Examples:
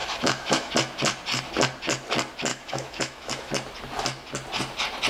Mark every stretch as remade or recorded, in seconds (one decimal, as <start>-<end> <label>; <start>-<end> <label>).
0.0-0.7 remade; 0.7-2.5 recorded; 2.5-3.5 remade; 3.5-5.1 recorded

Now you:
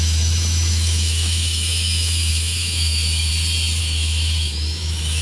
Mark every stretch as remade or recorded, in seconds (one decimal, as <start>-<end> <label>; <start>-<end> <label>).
0.0-3.3 remade; 3.3-3.8 recorded; 3.8-5.2 remade

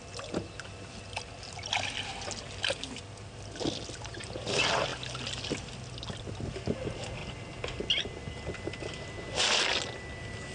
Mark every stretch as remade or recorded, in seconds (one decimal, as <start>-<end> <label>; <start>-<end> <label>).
0.0-10.5 recorded

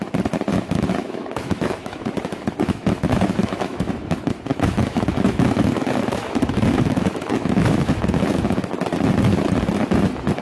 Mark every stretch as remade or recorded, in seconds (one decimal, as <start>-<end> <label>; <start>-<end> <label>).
0.0-0.5 recorded; 0.5-3.9 remade; 3.9-4.5 recorded; 4.5-8.7 remade; 8.7-10.4 recorded